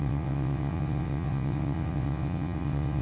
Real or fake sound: fake